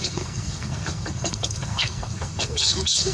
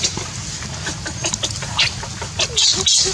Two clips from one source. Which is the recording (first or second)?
second